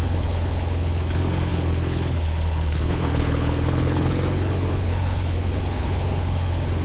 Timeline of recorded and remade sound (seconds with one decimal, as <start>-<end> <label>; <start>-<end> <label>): 0.0-6.8 remade